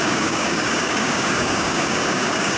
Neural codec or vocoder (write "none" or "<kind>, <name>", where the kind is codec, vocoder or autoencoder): codec, DAC